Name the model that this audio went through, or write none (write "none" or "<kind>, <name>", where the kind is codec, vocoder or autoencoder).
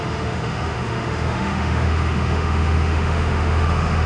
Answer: autoencoder, DAC-VAE